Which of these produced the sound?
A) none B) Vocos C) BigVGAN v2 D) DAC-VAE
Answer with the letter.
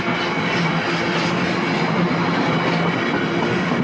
A